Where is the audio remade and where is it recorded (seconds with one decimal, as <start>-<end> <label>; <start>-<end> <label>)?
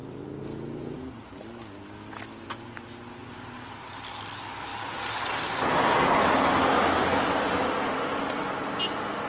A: 0.0-9.3 recorded